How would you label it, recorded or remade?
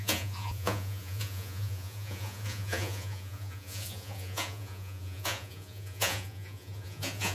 remade